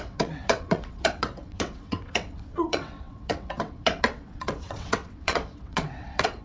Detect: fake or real fake